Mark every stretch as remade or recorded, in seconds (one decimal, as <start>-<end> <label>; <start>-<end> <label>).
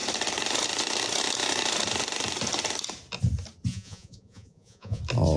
0.0-3.7 recorded; 3.7-5.0 remade; 5.0-5.4 recorded